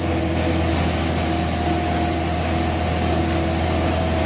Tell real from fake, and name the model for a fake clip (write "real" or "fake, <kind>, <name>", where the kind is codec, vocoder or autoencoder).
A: real